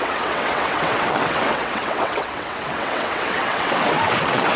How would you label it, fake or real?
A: fake